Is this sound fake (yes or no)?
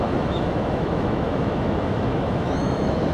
yes